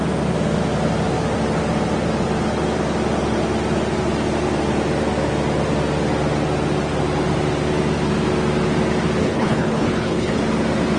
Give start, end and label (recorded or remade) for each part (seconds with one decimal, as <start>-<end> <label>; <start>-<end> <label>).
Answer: 0.0-9.2 recorded; 9.2-10.4 remade; 10.4-11.0 recorded